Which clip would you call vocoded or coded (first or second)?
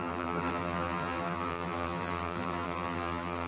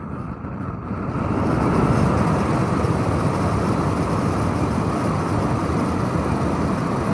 first